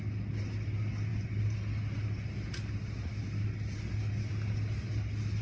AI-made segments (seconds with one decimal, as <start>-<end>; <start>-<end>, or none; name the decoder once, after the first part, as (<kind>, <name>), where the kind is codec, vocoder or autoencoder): none